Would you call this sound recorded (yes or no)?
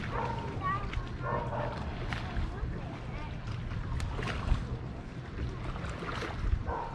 yes